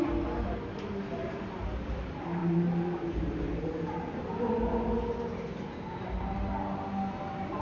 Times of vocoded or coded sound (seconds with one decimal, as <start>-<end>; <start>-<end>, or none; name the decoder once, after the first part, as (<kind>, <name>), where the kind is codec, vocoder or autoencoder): 1.2-1.9 (vocoder, BigVGAN v2); 2.4-4.2